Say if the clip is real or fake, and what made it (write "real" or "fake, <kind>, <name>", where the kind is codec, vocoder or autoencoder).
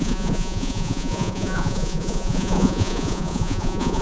fake, vocoder, Vocos